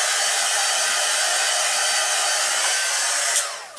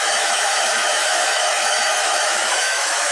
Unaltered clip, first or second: first